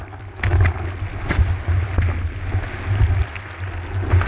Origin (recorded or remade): recorded